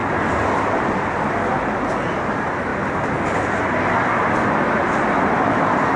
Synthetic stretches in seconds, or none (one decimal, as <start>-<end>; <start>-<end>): none